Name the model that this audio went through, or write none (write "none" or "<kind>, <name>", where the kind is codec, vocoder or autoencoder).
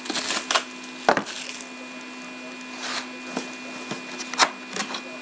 none